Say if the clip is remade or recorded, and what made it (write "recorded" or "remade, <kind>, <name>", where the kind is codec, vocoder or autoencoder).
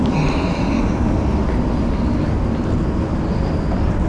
recorded